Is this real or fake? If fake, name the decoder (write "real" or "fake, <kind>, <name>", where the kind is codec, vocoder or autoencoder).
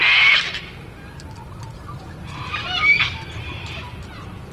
real